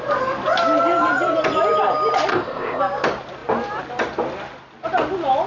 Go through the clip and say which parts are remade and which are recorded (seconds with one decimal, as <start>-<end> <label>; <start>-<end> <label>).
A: 0.0-2.3 recorded; 2.3-2.8 remade; 2.8-5.5 recorded